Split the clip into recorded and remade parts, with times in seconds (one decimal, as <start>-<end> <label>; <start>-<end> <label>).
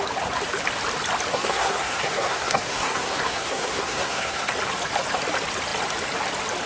0.0-1.3 recorded; 1.3-4.5 remade; 4.5-6.7 recorded